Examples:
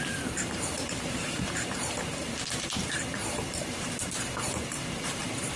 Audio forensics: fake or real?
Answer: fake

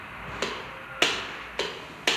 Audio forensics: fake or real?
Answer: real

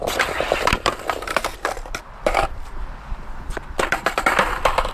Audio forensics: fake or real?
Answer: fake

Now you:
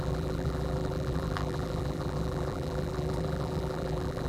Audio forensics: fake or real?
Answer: fake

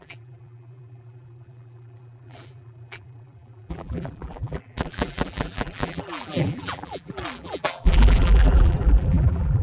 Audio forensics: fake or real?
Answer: fake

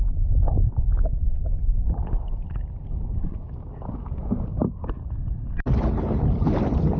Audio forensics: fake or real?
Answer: real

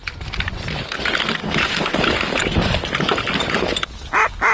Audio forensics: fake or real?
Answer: real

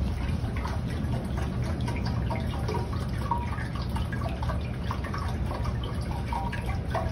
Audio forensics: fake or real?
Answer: real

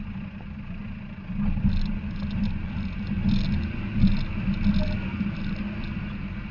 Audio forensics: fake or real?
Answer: real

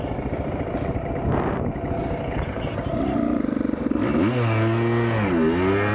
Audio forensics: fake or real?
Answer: real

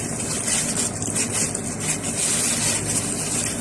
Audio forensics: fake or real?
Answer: real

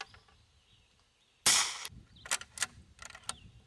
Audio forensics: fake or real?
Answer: real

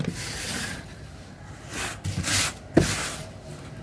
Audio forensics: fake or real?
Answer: real